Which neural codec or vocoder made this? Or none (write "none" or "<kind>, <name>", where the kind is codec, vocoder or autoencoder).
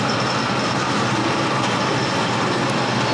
none